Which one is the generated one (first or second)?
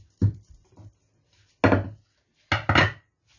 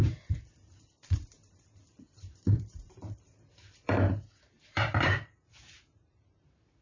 second